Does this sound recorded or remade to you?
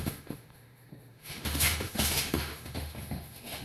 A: remade